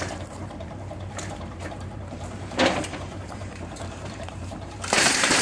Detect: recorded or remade remade